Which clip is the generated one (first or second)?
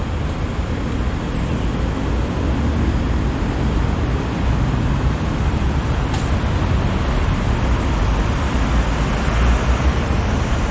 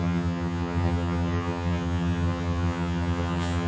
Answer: second